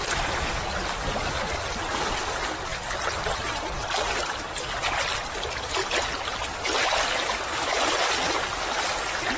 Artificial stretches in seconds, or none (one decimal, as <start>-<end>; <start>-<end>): none